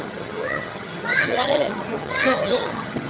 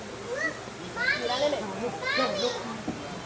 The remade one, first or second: first